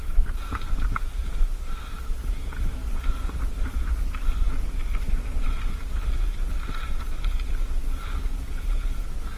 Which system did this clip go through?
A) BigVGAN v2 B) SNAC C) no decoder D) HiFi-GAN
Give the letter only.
C